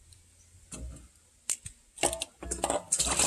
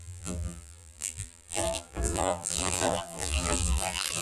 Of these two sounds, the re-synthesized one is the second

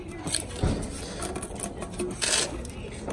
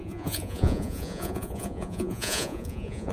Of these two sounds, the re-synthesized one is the second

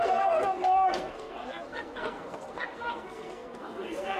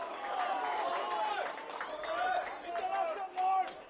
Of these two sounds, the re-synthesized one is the first